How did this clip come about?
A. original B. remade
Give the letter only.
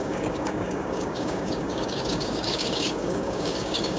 B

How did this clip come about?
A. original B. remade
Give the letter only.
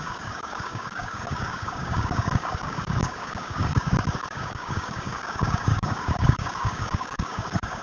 B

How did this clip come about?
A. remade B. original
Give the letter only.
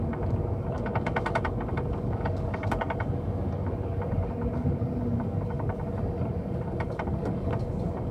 A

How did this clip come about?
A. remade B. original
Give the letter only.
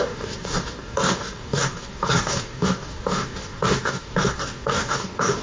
A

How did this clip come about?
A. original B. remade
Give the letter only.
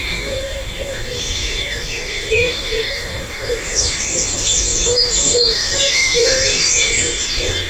B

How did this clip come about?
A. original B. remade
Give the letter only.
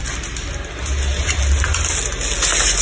A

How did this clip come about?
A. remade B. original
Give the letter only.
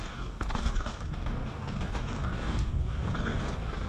A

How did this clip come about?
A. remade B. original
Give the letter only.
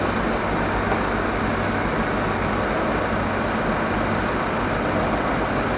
B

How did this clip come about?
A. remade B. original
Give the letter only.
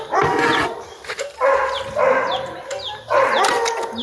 B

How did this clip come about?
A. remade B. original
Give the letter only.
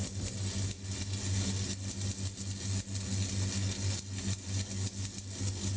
B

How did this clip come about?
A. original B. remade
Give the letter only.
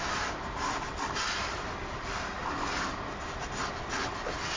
A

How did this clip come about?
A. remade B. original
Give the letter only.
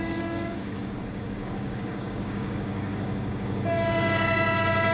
A